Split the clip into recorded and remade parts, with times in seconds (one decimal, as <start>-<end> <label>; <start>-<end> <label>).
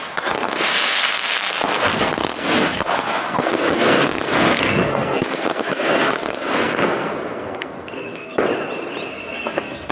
0.0-8.4 remade; 8.4-9.1 recorded; 9.1-9.9 remade